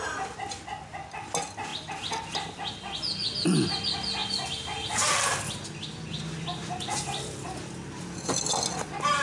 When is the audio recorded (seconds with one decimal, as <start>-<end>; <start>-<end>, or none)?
0.0-9.2